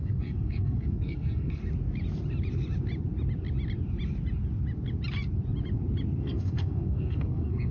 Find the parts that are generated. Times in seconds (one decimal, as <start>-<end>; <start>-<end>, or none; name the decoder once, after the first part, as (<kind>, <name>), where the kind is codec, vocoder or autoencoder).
0.0-1.6 (codec, SNAC); 6.2-7.7